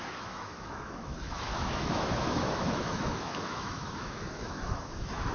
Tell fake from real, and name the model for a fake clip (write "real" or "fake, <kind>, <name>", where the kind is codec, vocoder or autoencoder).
fake, autoencoder, DAC-VAE